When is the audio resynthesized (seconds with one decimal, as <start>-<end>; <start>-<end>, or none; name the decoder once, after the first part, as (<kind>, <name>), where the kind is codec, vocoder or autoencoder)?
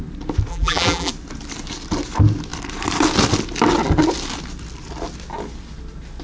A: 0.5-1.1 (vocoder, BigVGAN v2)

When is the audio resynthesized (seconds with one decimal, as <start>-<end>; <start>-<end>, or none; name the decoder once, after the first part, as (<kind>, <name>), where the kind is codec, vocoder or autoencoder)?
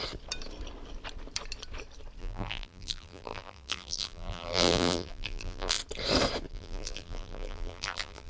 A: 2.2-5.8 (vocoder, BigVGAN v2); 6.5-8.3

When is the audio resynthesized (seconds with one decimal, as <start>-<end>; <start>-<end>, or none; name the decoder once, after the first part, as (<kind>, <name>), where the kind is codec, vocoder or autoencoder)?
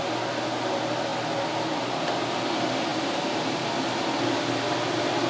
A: 2.9-3.4 (vocoder, BigVGAN v2)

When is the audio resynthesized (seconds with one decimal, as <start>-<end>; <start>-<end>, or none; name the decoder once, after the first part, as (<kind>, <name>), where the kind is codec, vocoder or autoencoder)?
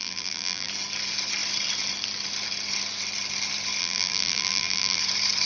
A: 0.0-0.7 (vocoder, BigVGAN v2); 3.8-5.0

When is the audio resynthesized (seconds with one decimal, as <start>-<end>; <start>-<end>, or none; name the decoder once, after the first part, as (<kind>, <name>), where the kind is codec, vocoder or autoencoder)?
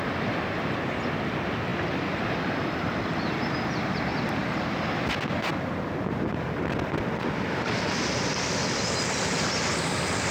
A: 1.7-3.3 (vocoder, BigVGAN v2); 5.5-6.6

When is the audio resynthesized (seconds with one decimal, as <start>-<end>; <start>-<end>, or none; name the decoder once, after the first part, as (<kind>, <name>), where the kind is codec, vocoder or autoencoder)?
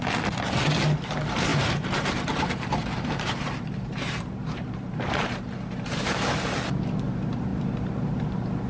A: 1.5-6.6 (vocoder, BigVGAN v2); 7.5-8.1